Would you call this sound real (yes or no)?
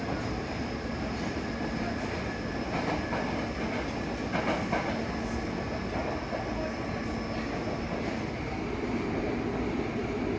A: yes